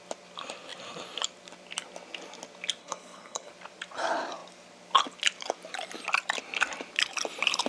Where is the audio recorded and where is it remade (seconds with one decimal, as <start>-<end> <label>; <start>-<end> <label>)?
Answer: 0.0-2.8 recorded; 2.8-3.5 remade; 3.5-7.7 recorded